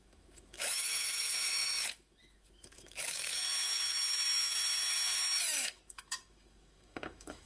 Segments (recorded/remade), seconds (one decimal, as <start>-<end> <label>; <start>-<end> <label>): 0.0-7.5 remade